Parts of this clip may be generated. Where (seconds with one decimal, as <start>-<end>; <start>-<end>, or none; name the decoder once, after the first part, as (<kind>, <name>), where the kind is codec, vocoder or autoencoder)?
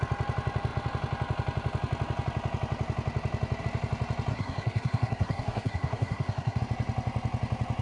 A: 4.3-6.6 (codec, SNAC)